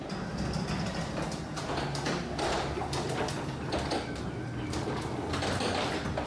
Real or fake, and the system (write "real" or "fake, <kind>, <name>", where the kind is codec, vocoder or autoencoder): real